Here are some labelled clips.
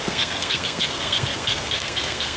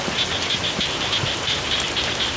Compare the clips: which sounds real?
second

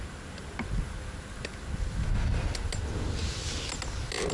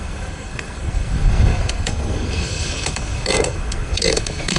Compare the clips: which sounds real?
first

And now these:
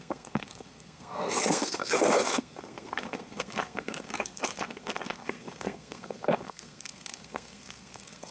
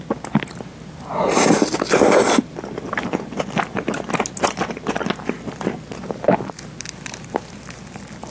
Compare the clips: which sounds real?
second